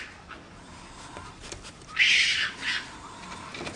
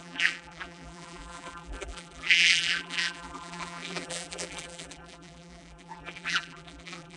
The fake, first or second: second